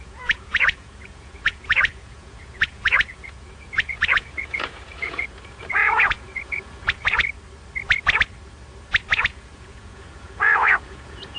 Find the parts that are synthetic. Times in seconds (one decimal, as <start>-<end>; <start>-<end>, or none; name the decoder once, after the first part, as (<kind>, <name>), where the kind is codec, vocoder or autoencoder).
0.0-7.2 (vocoder, Vocos); 9.1-11.4